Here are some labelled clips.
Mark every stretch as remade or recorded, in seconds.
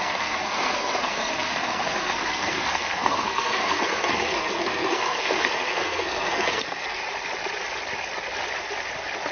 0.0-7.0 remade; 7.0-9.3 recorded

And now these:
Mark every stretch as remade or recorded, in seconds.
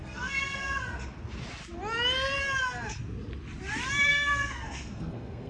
0.0-0.8 remade; 0.8-4.1 recorded; 4.1-5.5 remade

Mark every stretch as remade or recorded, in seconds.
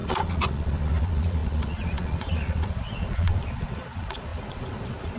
0.0-5.2 remade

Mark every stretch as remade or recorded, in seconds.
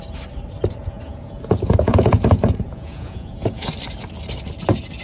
0.0-0.8 recorded; 0.8-3.7 remade; 3.7-5.0 recorded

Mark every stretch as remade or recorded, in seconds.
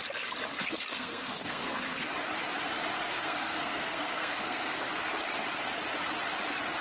0.0-0.5 recorded; 0.5-2.1 remade; 2.1-3.2 recorded; 3.2-4.9 remade; 4.9-6.8 recorded